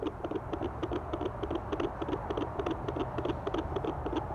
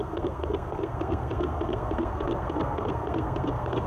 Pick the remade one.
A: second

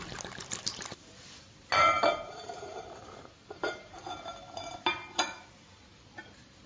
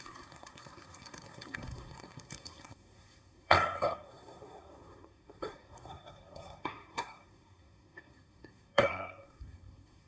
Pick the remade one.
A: second